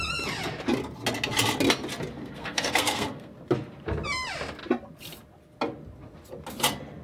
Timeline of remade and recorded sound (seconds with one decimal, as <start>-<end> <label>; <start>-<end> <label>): 0.0-2.2 recorded; 2.2-3.3 remade; 3.3-7.0 recorded